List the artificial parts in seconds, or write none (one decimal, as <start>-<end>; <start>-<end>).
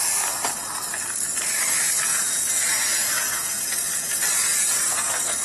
2.1-5.4